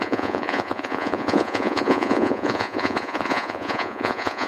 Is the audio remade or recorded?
remade